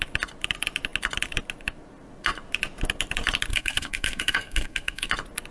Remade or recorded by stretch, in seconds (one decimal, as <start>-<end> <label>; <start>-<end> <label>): 0.0-3.5 recorded; 3.5-5.1 remade; 5.1-5.5 recorded